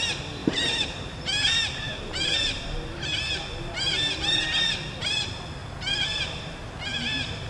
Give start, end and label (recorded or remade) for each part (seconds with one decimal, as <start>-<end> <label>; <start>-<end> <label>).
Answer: 0.0-0.4 recorded; 0.4-2.6 remade; 2.6-5.6 recorded; 5.6-6.6 remade; 6.6-7.5 recorded